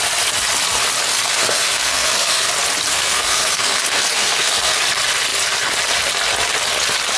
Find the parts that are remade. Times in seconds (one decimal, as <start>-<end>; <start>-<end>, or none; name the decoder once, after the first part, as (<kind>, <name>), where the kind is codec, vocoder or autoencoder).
1.1-2.5 (codec, SNAC); 2.9-4.8